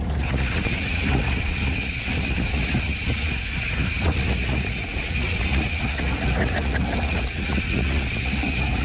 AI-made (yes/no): yes